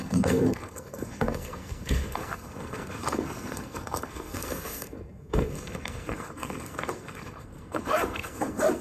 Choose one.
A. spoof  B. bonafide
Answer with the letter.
A